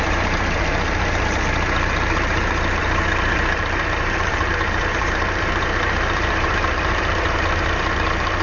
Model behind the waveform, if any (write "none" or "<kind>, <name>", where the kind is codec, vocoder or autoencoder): vocoder, BigVGAN v2